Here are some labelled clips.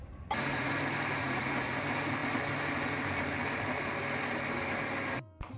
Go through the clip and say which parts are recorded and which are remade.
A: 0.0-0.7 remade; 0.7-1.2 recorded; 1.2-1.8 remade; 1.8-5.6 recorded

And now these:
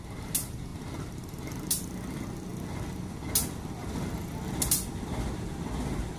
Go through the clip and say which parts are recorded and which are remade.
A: 0.0-6.2 recorded

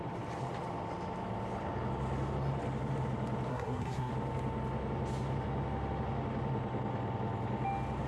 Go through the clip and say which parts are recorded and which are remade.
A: 0.0-3.5 recorded; 3.5-4.1 remade; 4.1-8.1 recorded